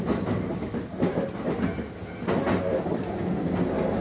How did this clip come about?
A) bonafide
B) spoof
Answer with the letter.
A